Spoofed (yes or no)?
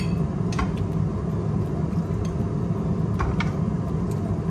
no